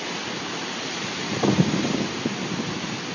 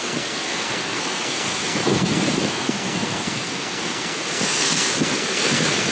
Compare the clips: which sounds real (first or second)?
first